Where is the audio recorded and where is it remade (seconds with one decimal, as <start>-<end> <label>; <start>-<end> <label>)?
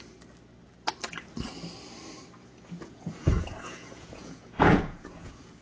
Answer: 0.0-2.4 recorded; 2.4-5.6 remade